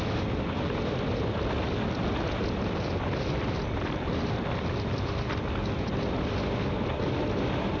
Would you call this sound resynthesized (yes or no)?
no